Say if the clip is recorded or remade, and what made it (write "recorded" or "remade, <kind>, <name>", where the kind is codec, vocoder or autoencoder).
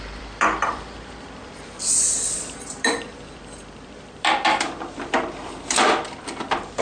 remade, vocoder, BigVGAN v2